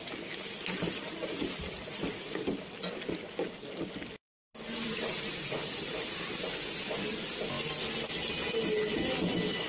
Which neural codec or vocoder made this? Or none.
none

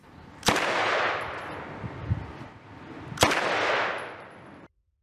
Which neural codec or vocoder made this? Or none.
none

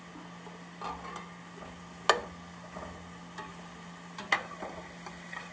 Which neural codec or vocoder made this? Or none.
none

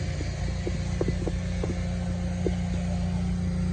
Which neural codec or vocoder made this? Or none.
none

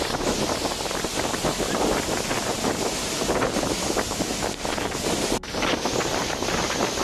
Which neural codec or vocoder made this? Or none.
none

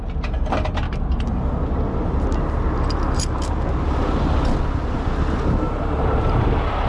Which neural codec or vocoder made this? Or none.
none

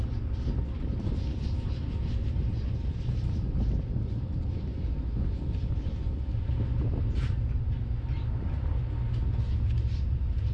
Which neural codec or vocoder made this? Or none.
none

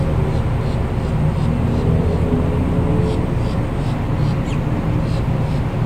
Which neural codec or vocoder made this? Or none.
none